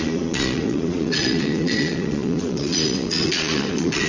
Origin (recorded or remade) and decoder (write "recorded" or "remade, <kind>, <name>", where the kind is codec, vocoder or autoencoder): remade, vocoder, Vocos